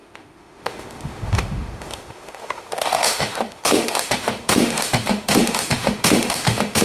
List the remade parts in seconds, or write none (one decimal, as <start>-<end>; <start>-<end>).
0.0-6.8